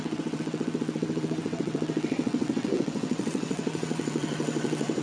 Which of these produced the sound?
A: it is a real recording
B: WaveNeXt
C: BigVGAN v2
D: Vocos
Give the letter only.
B